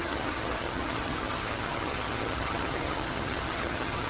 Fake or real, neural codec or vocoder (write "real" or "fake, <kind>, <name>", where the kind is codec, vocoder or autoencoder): fake, vocoder, HiFi-GAN